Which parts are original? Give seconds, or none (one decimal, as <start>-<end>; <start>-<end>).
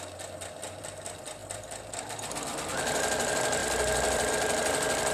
0.0-1.4; 2.2-3.6; 4.3-5.1